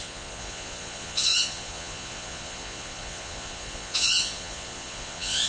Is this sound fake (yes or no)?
yes